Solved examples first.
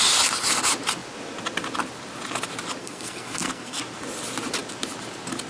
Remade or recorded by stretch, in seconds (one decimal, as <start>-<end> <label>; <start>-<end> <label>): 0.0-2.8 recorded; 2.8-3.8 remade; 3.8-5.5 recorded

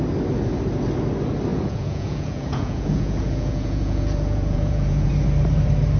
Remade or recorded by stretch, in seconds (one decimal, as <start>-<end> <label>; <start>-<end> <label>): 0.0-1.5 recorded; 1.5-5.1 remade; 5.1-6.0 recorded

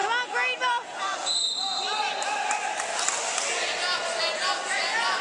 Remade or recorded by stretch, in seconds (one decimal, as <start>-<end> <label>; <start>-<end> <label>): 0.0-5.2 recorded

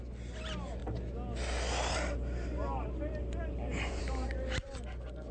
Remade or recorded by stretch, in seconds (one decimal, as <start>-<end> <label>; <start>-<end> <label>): 0.0-5.3 recorded

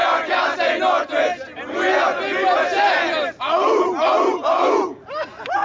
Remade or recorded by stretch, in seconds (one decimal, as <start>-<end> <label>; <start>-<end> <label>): 0.0-5.6 recorded